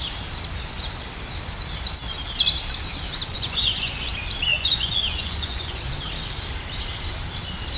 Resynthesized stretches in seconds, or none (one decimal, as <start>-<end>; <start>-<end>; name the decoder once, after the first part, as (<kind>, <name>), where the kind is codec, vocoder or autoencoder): 3.3-4.1 (vocoder, Vocos); 4.5-5.8